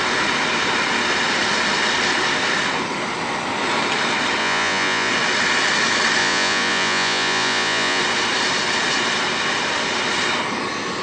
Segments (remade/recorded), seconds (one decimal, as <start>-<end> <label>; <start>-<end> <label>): 0.0-4.4 recorded; 4.4-5.1 remade; 5.1-6.2 recorded; 6.2-8.0 remade; 8.0-11.0 recorded